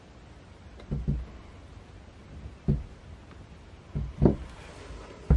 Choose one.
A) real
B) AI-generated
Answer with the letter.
A